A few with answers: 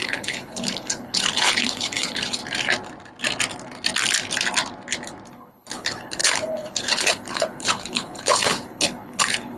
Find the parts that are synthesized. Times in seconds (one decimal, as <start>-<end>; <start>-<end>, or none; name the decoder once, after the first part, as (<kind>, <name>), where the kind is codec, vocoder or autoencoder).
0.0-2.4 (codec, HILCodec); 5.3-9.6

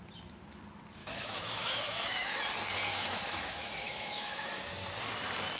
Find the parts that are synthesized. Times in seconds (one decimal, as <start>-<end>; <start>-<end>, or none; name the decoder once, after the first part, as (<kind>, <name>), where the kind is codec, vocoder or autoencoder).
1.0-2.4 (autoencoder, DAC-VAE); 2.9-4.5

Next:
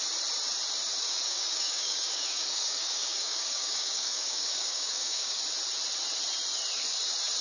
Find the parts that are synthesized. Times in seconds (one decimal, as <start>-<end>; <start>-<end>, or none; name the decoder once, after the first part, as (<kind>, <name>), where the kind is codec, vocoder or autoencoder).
1.0-5.4 (codec, DAC)

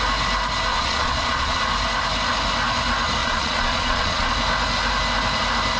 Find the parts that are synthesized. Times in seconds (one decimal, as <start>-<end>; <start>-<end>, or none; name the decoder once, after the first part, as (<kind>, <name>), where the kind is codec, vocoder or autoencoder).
0.7-1.6 (vocoder, Vocos); 3.2-4.3

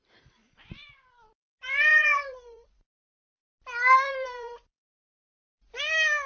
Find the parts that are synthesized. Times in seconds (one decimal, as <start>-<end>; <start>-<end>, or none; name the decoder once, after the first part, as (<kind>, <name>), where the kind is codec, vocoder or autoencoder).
1.9-2.9 (vocoder, BigVGAN v2); 4.1-4.7

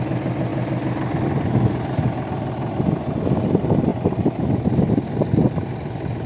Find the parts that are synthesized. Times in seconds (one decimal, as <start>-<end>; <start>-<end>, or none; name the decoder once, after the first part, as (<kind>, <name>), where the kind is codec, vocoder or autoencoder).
none

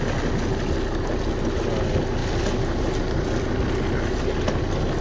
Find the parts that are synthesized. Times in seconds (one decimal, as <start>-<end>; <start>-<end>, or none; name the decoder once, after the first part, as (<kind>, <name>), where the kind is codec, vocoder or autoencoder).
none